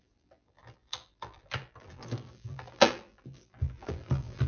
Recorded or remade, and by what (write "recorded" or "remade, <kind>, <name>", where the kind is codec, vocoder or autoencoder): remade, vocoder, BigVGAN v2